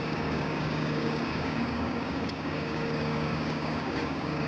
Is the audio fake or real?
fake